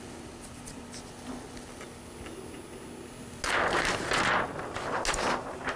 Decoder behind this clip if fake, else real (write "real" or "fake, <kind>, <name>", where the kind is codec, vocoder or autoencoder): real